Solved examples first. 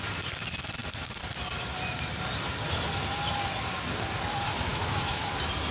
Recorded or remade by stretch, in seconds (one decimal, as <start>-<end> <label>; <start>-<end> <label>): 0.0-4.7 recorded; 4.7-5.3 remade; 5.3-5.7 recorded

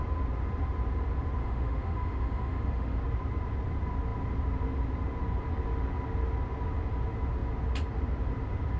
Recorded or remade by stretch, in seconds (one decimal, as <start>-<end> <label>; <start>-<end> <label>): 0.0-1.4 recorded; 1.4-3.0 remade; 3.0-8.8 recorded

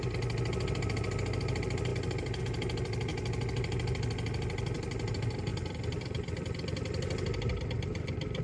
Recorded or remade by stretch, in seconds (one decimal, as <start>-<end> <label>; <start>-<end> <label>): 0.0-8.4 recorded